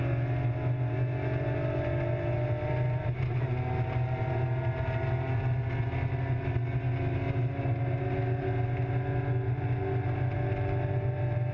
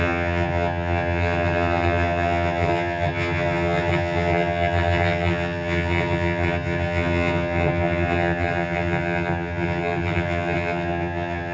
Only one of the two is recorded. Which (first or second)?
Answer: first